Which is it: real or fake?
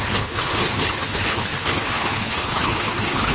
fake